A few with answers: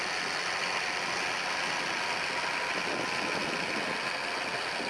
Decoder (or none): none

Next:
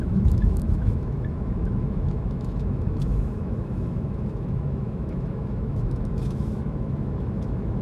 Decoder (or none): autoencoder, DAC-VAE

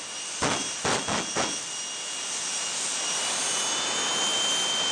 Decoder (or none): none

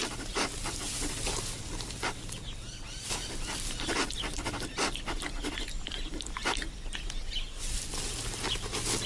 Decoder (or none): none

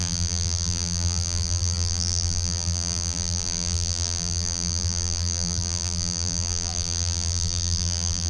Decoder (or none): vocoder, BigVGAN v2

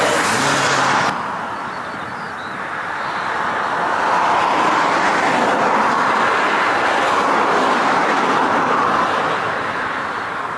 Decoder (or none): none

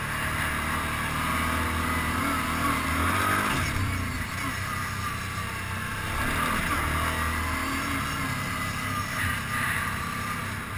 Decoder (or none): none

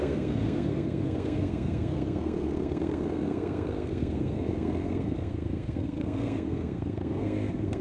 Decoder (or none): codec, SNAC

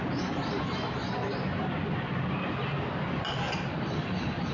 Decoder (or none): none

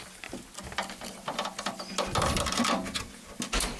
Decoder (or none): none